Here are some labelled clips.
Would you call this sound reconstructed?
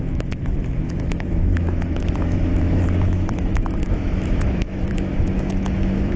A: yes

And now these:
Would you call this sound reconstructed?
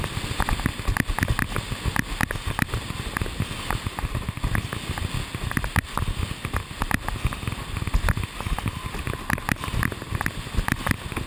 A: no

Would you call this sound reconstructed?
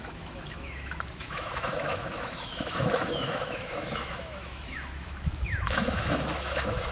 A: yes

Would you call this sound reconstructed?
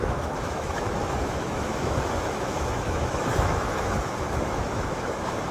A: yes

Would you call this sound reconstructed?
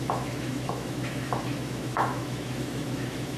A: yes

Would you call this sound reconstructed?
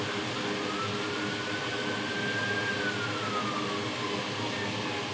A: no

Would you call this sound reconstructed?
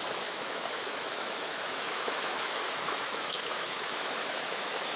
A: yes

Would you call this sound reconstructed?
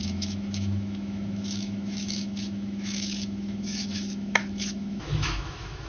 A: yes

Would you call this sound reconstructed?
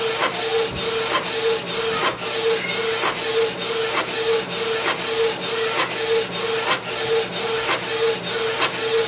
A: no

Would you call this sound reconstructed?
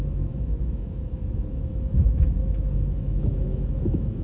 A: yes